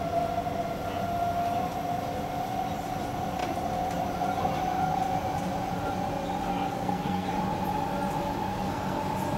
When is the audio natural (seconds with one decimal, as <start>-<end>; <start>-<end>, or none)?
0.0-6.5; 7.3-8.5; 9.0-9.4